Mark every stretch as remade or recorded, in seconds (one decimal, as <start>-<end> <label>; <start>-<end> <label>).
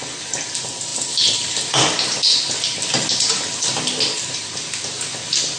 0.0-5.6 recorded